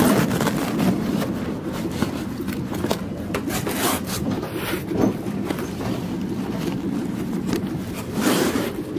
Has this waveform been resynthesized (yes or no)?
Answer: yes